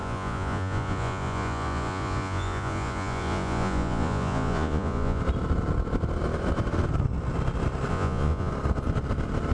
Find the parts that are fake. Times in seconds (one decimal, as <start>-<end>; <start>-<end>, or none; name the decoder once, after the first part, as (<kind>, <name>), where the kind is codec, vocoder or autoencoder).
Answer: 0.0-5.2 (vocoder, Vocos); 7.9-8.5